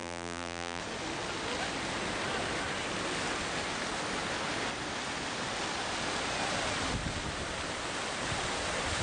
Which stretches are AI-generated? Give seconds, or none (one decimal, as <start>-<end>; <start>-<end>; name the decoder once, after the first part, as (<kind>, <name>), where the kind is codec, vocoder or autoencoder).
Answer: 0.0-0.8 (vocoder, BigVGAN v2)